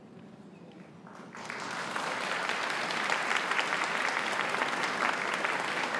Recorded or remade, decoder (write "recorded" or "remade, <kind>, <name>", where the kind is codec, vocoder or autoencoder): recorded